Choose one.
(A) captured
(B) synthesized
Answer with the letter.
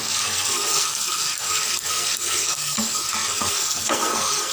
B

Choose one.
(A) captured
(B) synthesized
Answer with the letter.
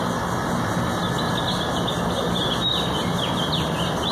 A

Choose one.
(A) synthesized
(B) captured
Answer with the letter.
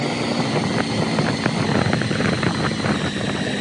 B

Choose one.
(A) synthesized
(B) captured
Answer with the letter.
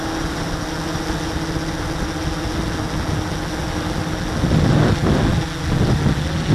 B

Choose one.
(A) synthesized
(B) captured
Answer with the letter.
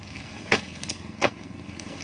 A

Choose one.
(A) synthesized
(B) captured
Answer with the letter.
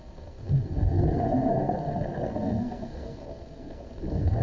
A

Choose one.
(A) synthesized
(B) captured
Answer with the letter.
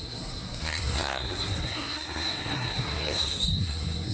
A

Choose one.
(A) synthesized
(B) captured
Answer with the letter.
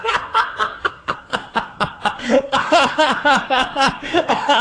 A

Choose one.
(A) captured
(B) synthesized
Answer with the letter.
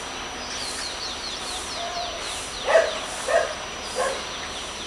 A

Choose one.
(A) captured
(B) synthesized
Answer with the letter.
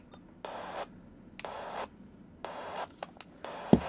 A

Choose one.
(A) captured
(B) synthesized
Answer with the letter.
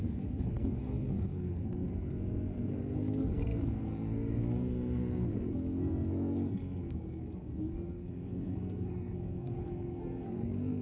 B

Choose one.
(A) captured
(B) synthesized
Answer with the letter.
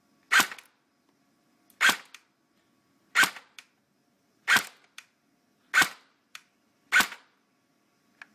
A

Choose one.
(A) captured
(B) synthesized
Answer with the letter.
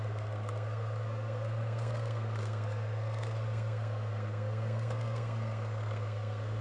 B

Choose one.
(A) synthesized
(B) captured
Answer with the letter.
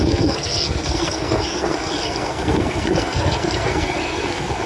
A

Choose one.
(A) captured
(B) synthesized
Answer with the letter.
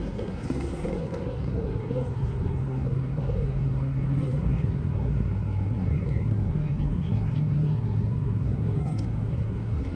B